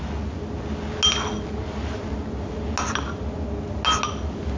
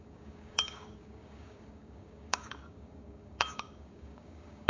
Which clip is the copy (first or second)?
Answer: second